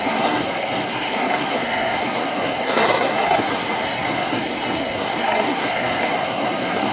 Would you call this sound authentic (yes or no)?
no